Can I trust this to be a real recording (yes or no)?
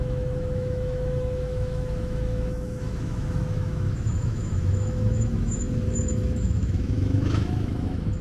no